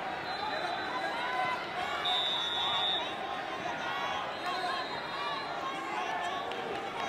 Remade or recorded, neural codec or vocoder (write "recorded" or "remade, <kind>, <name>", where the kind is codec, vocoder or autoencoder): recorded